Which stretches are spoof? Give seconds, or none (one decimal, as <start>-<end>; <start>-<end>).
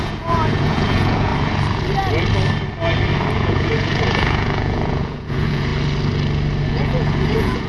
0.0-1.3; 3.3-5.7; 6.7-7.7